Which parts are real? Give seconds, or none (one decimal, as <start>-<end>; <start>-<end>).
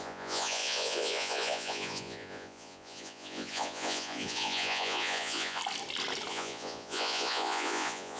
5.6-6.3